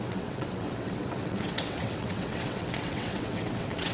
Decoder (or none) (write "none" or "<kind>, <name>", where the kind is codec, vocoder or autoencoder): vocoder, WaveNeXt